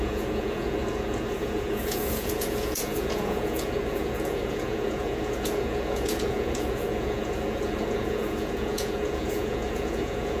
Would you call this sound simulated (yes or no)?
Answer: yes